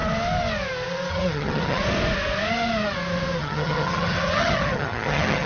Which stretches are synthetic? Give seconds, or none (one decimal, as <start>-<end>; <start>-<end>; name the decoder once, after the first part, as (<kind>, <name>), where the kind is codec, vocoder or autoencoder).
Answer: 1.1-1.8 (vocoder, HiFi-GAN); 3.4-5.5